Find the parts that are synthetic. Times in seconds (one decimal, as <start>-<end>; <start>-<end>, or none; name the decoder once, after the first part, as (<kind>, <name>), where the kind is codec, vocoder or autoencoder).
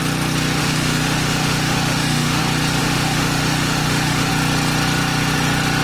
0.6-2.4 (autoencoder, DAC-VAE); 2.8-4.3